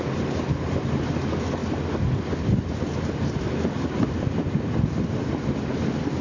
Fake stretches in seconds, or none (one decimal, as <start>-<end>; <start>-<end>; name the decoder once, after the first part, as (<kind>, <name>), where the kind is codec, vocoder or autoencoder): none